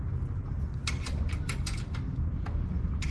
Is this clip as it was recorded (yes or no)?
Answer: yes